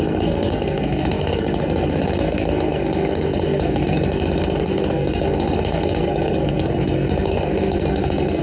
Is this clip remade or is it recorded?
remade